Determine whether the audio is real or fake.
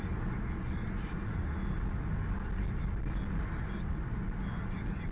real